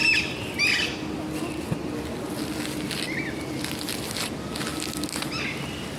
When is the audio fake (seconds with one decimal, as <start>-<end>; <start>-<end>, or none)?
none